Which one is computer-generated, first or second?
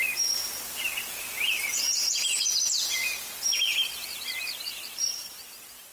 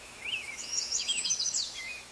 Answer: second